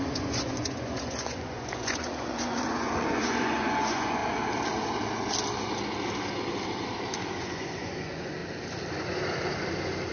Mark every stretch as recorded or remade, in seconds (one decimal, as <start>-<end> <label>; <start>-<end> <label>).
0.0-4.2 remade; 4.2-7.4 recorded; 7.4-8.4 remade; 8.4-10.1 recorded